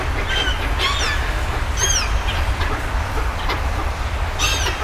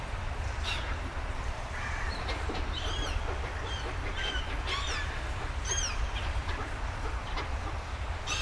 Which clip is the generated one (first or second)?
second